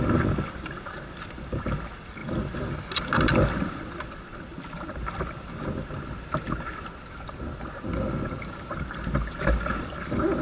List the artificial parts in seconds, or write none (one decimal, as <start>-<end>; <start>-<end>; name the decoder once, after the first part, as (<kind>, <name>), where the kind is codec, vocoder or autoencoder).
none